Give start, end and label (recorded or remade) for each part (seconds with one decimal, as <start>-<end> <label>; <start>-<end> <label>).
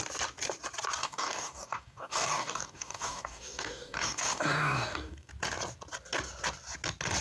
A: 0.0-1.0 recorded; 1.0-5.3 remade; 5.3-7.2 recorded